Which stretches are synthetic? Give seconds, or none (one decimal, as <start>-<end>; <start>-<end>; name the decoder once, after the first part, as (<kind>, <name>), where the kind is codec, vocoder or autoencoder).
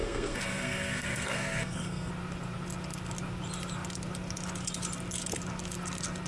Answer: 0.0-2.1 (codec, SNAC)